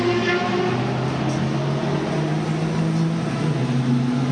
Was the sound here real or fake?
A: real